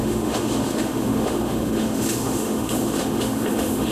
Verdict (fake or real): fake